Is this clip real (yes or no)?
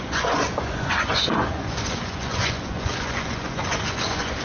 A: no